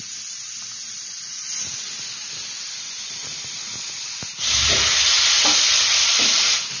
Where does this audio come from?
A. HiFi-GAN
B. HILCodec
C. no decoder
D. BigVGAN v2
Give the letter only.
C